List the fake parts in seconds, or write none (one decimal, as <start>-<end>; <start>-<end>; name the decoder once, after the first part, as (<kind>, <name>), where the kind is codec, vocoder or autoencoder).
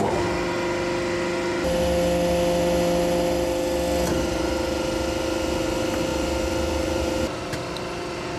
6.1-7.4 (vocoder, BigVGAN v2)